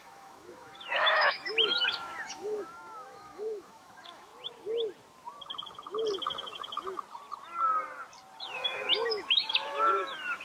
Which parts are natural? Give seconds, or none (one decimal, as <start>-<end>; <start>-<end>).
4.3-8.4